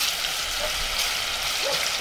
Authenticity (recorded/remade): recorded